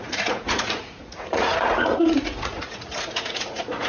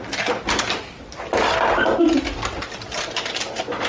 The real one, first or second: second